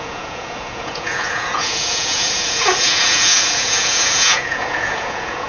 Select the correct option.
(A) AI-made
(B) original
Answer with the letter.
A